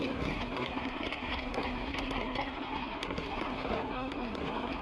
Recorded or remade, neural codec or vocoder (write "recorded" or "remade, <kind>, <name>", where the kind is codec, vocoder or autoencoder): remade, codec, SNAC